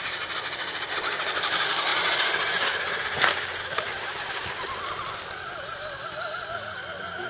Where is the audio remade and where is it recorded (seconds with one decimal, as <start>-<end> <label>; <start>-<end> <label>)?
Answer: 0.0-7.3 recorded